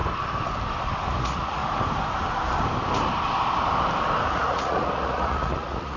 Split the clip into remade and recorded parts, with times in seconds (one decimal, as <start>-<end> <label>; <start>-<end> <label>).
0.0-1.2 recorded; 1.2-1.6 remade; 1.6-4.3 recorded; 4.3-6.0 remade